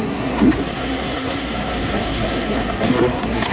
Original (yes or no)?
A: no